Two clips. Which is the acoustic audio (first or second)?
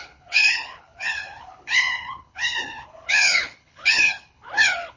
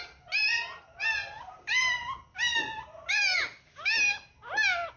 second